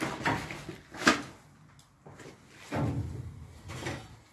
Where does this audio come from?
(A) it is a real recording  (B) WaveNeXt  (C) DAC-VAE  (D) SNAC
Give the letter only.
A